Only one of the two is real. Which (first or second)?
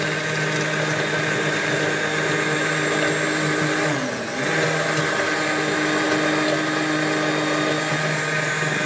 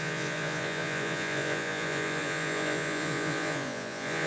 first